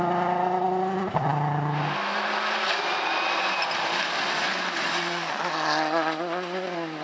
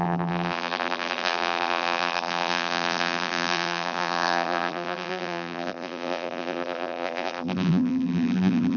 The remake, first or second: second